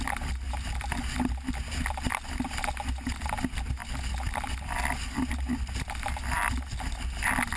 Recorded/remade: recorded